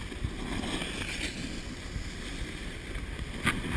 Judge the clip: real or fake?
real